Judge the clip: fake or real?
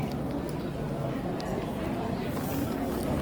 real